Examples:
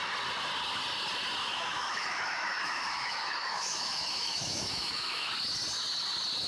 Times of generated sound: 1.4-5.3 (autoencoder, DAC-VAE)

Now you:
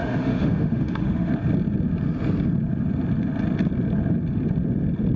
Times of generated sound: 0.0-1.3 (autoencoder, DAC-VAE)